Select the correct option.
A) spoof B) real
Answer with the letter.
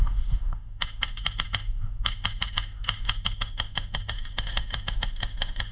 A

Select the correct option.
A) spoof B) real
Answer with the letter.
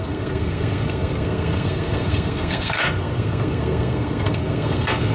A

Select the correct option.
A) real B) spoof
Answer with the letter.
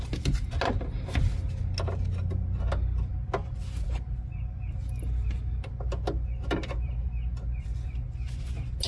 A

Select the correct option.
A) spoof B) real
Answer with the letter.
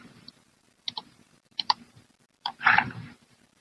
A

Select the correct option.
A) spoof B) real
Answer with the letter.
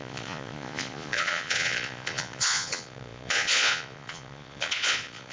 A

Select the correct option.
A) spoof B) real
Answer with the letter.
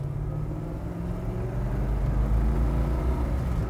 B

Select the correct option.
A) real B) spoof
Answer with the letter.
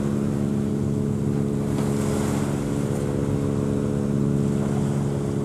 A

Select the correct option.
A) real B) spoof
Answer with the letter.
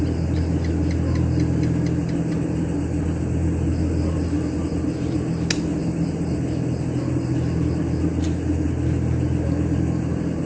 A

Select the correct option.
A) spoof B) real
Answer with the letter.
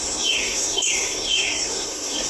A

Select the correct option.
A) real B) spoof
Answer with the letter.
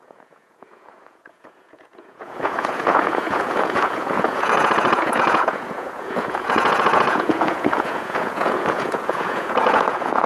B